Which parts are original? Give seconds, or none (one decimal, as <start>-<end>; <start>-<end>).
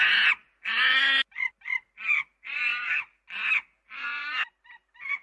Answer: 0.0-5.2